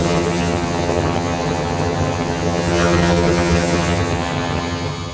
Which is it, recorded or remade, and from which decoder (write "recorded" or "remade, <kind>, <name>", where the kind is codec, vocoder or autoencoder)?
remade, vocoder, HiFi-GAN